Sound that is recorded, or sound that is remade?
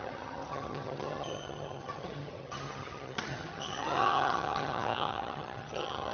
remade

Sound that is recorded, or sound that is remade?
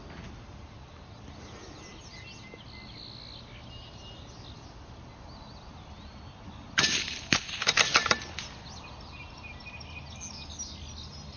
recorded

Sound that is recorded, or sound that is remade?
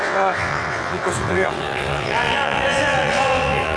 remade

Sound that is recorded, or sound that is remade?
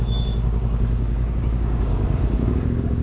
remade